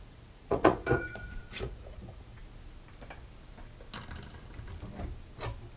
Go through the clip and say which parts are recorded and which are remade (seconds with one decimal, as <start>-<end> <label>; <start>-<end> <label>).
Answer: 0.0-2.4 remade; 2.4-5.8 recorded